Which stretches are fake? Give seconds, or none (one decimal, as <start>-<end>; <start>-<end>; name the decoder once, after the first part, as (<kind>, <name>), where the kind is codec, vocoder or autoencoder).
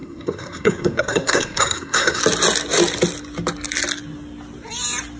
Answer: 0.0-2.2 (codec, SNAC)